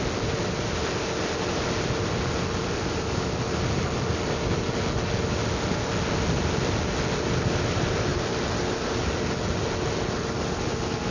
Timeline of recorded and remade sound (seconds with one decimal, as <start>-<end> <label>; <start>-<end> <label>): 0.0-11.1 recorded